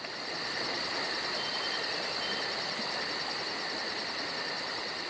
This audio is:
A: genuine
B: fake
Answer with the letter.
A